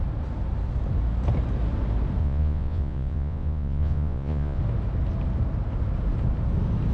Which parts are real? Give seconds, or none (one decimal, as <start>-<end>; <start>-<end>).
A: 0.0-2.2; 4.6-6.9